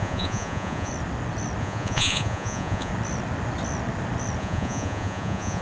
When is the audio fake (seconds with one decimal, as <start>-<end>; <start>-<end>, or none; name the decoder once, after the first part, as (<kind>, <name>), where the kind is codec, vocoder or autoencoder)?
0.0-0.9 (vocoder, Vocos); 1.6-2.9; 4.4-5.6